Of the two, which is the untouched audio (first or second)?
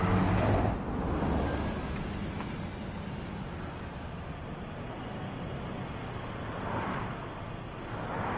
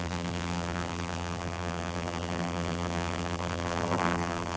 first